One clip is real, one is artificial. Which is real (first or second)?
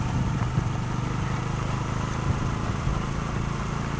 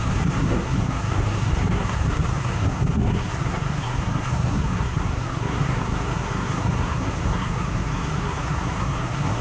first